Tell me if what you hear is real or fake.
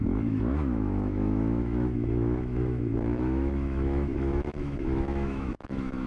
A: fake